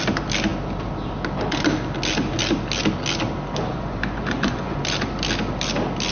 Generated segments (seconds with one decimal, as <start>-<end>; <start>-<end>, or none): 3.7-4.8